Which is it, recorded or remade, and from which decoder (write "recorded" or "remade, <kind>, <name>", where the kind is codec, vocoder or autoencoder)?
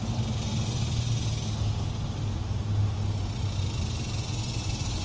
recorded